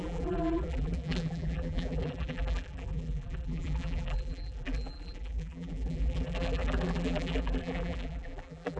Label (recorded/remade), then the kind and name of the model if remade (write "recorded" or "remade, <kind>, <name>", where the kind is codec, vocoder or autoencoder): remade, vocoder, BigVGAN v2